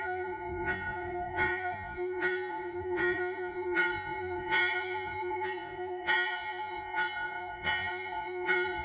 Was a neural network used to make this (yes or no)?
yes